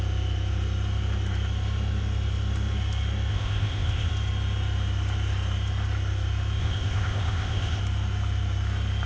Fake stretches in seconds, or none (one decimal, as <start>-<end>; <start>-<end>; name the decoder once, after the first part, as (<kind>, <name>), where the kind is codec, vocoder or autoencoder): 3.3-4.1 (codec, ZipCodec); 6.6-7.8